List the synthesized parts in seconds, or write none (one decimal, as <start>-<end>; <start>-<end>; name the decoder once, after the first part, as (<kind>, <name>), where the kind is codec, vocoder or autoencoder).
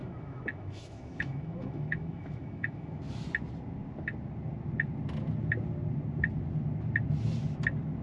0.0-3.0 (autoencoder, DAC-VAE)